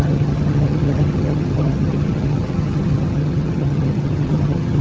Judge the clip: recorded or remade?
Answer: remade